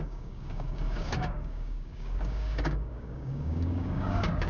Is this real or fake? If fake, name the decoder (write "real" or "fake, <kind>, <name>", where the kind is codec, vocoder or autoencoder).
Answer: fake, codec, DAC